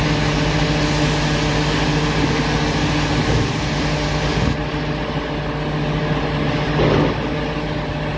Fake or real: real